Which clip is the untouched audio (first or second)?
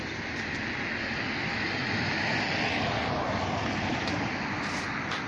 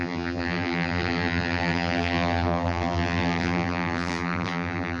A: first